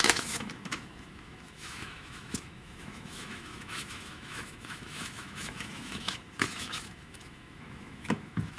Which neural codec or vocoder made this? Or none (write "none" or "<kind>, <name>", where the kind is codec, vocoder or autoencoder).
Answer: autoencoder, DAC-VAE